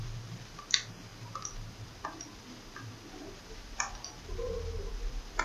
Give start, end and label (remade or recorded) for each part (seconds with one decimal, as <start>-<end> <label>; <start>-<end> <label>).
0.0-5.4 recorded